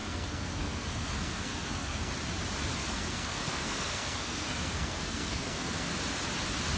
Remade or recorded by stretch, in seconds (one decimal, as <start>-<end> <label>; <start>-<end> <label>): 0.0-2.1 remade; 2.1-2.8 recorded; 2.8-5.9 remade; 5.9-6.8 recorded